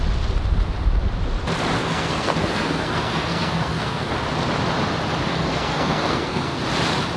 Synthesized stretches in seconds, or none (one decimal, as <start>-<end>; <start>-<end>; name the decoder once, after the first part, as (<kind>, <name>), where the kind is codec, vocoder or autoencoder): 1.8-4.1 (codec, SNAC); 5.3-6.6